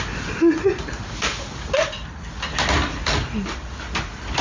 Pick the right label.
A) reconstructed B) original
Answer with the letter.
B